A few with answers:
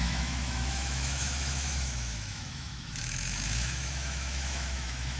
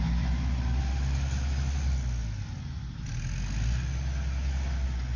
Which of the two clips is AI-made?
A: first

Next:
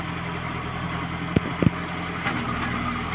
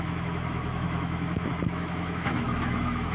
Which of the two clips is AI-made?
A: second